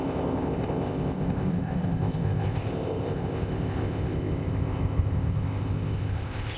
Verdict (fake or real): fake